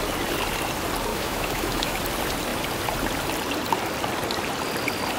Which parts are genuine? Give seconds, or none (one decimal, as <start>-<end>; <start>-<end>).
0.0-1.1; 2.0-5.2